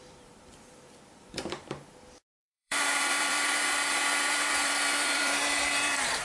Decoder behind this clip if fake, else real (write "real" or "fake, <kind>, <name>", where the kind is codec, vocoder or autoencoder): fake, vocoder, BigVGAN v2